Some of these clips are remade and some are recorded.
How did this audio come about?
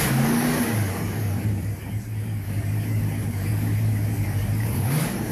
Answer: remade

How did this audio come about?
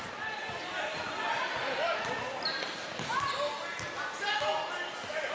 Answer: recorded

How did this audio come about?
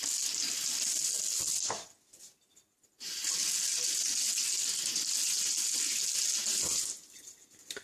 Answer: recorded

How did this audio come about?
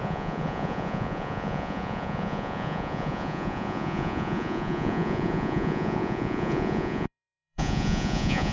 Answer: remade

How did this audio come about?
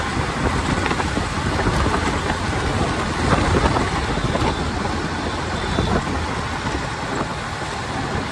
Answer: recorded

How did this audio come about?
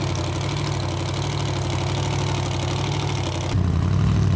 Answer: recorded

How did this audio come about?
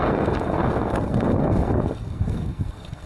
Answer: remade